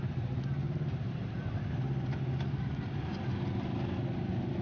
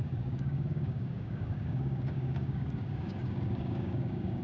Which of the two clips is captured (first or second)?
first